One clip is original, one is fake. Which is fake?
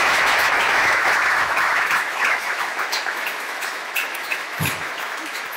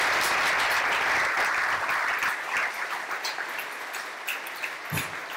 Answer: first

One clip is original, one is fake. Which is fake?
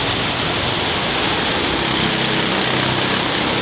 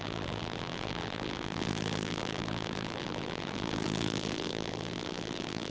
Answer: second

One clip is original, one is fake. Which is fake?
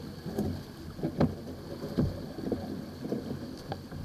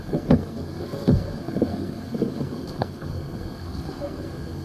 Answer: second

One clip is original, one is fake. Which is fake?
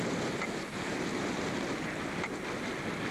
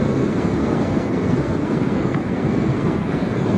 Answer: second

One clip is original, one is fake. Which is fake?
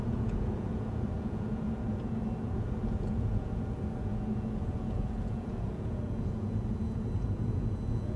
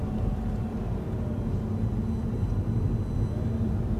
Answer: first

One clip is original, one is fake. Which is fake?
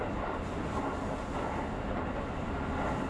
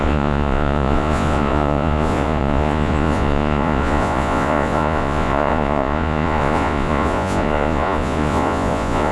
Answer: second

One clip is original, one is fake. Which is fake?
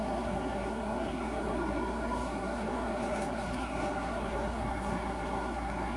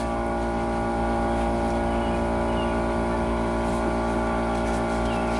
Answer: first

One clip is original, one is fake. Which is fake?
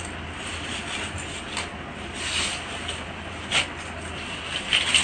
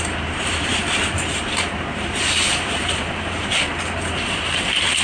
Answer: second